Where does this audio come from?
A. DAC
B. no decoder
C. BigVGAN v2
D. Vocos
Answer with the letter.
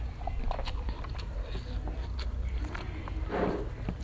B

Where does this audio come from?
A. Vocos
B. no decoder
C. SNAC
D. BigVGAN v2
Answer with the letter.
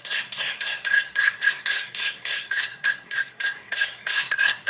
C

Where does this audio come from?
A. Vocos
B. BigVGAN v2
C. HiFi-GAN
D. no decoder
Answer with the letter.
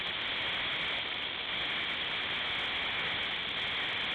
D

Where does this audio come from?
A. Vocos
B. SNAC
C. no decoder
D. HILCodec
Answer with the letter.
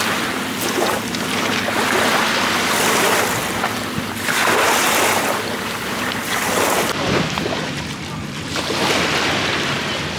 C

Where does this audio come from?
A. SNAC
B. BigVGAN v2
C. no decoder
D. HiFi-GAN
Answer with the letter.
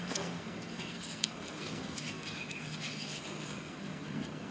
A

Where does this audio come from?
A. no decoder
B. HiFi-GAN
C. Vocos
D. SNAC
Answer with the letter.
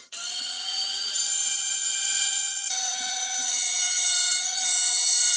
B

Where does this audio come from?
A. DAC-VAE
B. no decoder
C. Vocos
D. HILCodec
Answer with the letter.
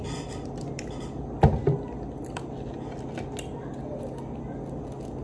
B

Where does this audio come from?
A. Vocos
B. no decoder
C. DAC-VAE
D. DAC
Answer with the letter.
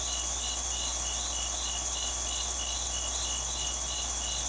B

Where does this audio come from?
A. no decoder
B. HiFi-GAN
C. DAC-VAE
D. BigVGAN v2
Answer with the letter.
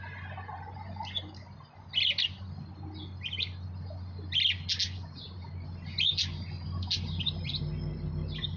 A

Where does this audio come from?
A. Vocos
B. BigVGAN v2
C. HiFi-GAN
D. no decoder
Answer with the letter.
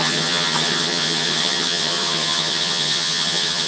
C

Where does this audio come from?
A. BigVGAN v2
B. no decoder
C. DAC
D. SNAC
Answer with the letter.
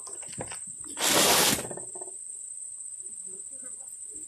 B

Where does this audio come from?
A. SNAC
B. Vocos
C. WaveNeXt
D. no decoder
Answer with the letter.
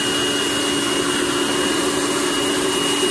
D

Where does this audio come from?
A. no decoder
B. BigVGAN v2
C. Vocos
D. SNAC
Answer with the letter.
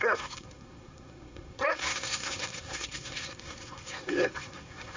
D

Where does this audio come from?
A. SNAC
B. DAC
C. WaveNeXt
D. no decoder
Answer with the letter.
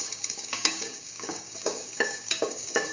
B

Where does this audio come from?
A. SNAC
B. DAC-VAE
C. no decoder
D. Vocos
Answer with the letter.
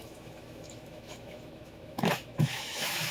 B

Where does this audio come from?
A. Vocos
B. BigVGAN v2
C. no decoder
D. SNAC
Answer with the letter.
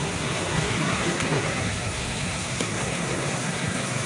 D